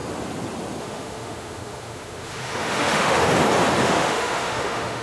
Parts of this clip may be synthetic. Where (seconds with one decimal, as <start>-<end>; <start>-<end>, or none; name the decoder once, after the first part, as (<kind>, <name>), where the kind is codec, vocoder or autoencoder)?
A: 0.8-3.2 (autoencoder, DAC-VAE); 3.8-5.0